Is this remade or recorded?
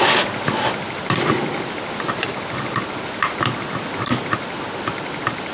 recorded